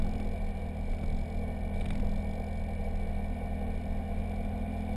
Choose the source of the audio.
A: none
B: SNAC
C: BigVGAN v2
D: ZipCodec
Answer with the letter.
A